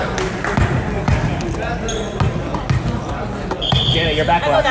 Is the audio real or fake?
real